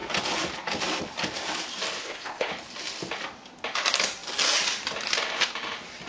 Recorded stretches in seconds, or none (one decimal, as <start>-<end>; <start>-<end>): 0.0-2.0; 2.5-6.1